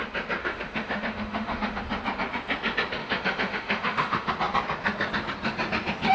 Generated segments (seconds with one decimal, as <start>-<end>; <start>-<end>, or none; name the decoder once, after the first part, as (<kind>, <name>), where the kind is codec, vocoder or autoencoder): 0.4-1.8 (autoencoder, DAC-VAE); 3.0-4.3